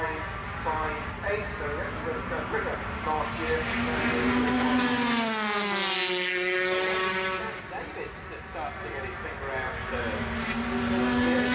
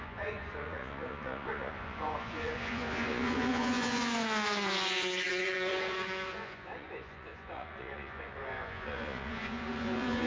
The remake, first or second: second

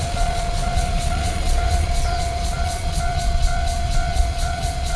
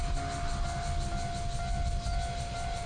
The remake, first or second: first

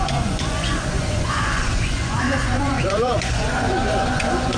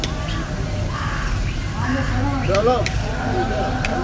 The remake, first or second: first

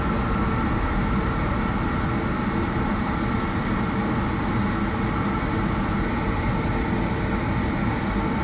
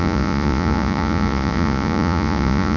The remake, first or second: second